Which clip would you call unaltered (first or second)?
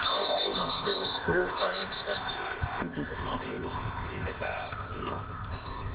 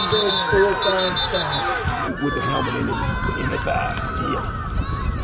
second